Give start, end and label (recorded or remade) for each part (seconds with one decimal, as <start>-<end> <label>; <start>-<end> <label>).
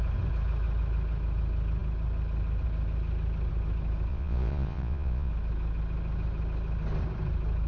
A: 0.0-4.1 recorded; 4.1-5.3 remade; 5.3-7.7 recorded